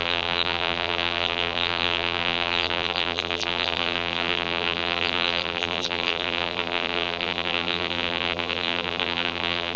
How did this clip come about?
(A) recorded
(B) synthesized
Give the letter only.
B